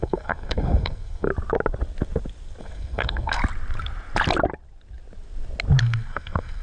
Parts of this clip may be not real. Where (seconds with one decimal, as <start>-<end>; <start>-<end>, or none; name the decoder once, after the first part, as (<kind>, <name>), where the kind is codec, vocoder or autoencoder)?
0.0-1.3 (codec, SNAC); 2.6-3.4; 5.8-6.6

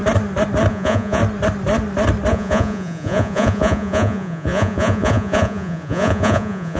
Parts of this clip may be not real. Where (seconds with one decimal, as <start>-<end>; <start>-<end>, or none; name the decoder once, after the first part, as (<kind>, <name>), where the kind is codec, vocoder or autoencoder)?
0.7-1.2 (vocoder, Vocos); 2.3-6.8

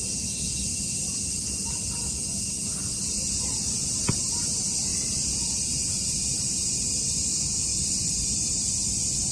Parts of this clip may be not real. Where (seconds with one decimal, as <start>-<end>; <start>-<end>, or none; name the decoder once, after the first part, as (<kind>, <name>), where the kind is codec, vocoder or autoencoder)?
0.7-4.3 (vocoder, BigVGAN v2); 7.7-8.7

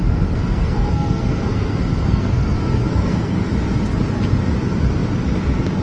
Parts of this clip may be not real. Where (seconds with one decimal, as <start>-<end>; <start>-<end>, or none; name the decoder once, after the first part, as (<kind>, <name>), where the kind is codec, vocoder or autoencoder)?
0.0-3.5 (codec, SNAC)

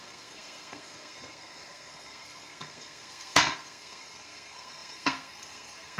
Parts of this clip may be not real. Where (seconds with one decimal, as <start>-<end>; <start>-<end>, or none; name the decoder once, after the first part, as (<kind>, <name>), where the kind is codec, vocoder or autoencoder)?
0.0-6.0 (codec, SNAC)